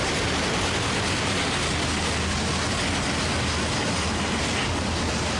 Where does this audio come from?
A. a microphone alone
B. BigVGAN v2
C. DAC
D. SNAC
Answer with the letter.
A